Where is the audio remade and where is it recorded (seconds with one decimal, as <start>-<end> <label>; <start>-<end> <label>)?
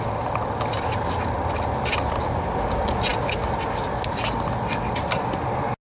0.0-5.9 recorded